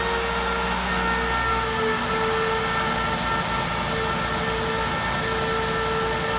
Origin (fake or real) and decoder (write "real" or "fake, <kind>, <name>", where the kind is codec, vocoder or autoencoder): real